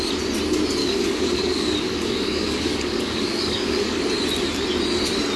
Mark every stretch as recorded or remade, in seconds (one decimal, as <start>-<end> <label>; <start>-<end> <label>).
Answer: 0.0-0.8 recorded; 0.8-4.0 remade; 4.0-5.4 recorded